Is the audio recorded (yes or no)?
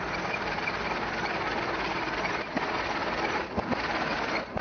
yes